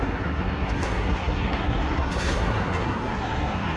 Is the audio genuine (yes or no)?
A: no